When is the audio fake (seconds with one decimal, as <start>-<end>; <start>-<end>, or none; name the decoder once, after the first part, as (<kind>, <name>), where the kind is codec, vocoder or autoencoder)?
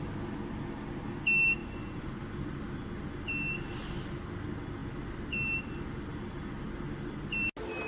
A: 1.6-2.2 (vocoder, Vocos)